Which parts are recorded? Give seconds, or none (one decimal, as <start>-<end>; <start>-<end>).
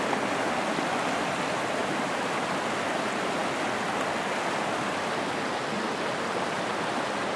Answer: 0.0-1.8; 2.3-7.4